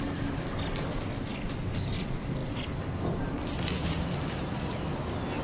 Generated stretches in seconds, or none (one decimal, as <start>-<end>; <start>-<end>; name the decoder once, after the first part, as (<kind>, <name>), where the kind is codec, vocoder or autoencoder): none